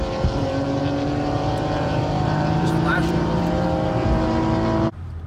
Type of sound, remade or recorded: remade